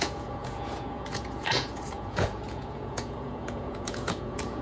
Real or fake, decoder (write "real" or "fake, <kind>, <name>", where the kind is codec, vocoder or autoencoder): fake, vocoder, Vocos